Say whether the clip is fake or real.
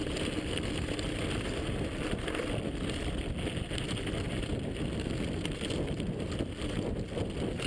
real